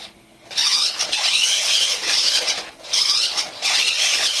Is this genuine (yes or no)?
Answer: no